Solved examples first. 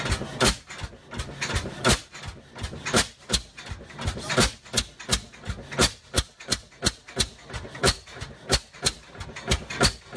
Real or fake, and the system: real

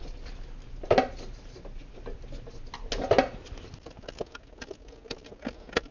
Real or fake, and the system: real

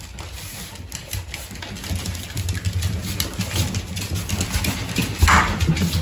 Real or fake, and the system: real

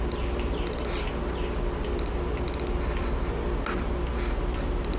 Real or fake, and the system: real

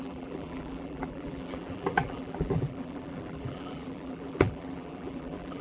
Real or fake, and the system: fake, vocoder, BigVGAN v2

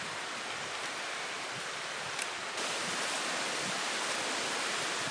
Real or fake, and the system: real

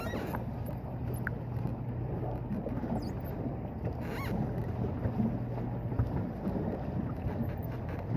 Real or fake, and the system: real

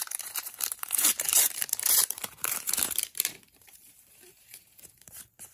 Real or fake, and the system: fake, vocoder, BigVGAN v2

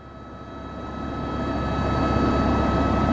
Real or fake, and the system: real